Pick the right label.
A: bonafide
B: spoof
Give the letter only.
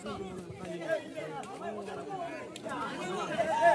A